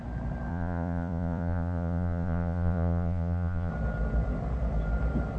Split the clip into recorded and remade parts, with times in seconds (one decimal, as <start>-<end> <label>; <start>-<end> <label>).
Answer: 0.0-0.5 recorded; 0.5-3.7 remade; 3.7-5.4 recorded